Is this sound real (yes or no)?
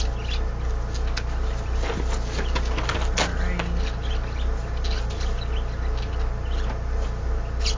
yes